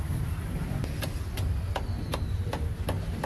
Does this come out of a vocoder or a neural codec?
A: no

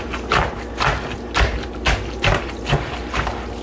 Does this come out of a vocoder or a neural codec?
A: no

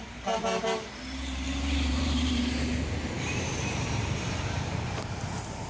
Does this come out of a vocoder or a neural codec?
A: yes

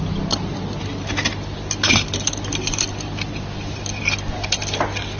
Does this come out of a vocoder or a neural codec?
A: no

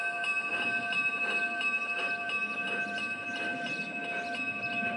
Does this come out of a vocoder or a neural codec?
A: no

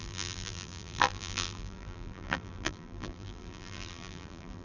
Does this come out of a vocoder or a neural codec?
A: yes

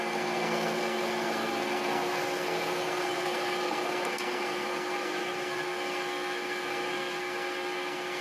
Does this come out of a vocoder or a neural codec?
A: yes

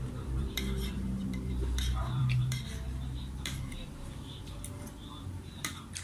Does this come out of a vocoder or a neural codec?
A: yes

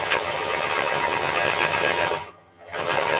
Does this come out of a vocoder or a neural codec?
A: yes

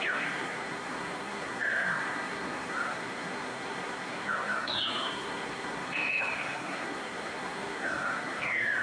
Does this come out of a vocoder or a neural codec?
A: yes